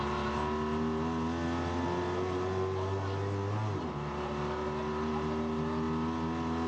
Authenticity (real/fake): real